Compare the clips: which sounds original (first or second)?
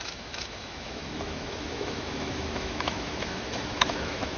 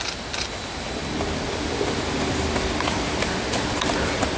second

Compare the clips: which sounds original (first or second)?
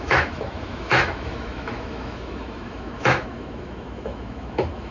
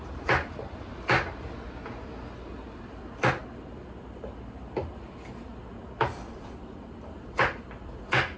second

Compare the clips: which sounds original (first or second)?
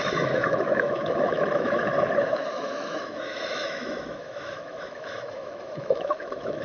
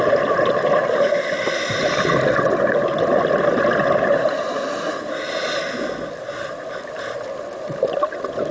second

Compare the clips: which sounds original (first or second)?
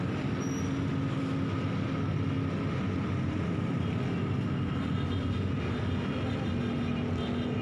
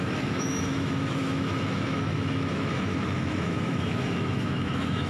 first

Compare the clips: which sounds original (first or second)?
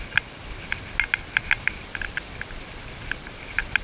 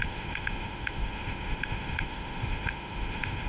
first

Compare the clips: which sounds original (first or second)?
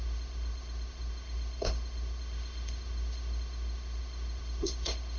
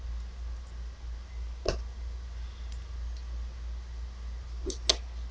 second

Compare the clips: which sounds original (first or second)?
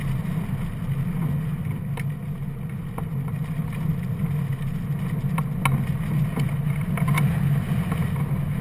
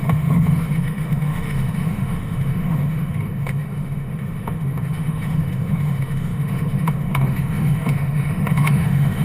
first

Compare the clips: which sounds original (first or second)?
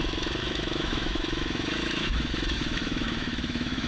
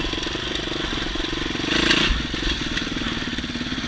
second